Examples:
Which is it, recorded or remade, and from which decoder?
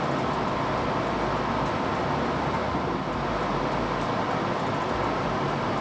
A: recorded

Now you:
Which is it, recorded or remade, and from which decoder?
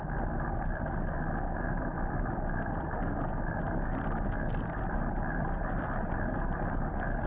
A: recorded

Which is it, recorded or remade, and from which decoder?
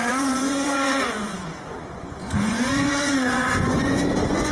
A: remade, vocoder, Vocos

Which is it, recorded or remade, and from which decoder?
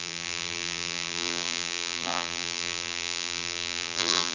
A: remade, vocoder, BigVGAN v2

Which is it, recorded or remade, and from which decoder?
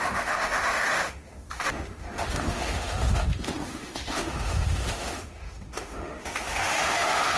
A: remade, autoencoder, DAC-VAE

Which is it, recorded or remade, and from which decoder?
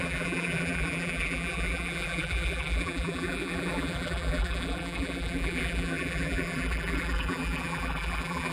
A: remade, vocoder, BigVGAN v2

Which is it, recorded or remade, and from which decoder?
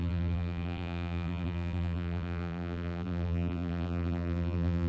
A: remade, vocoder, BigVGAN v2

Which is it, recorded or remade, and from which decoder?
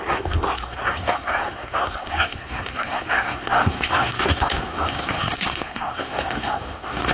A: remade, codec, SNAC